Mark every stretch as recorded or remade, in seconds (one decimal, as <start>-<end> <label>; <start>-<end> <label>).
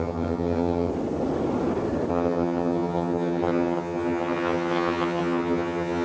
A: 0.0-0.9 remade; 0.9-2.1 recorded; 2.1-6.0 remade